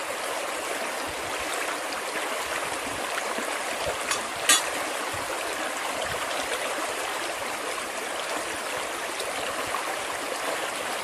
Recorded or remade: recorded